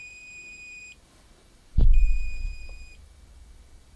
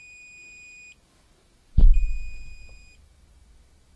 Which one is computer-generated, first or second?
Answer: first